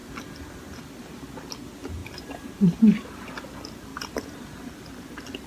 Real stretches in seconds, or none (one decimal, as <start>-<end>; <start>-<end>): 0.8-2.0; 3.3-3.9; 4.7-5.5